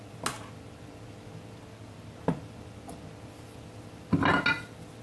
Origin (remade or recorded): recorded